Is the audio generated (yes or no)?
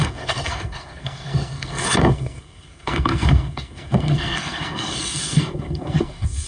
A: yes